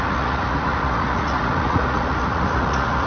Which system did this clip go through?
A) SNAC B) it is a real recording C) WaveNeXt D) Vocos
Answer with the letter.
D